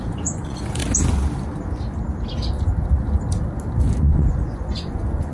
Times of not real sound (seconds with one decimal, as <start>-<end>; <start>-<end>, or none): 0.0-0.8; 4.0-5.3